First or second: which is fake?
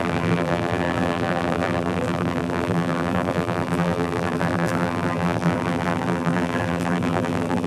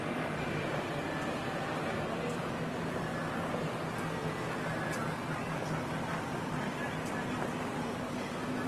first